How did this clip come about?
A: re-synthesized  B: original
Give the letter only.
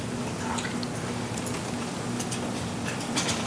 A